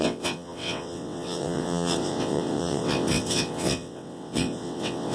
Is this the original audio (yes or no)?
no